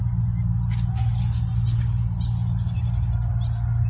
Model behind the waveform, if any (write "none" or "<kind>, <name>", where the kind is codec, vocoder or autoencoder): none